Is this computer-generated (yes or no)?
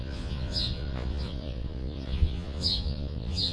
yes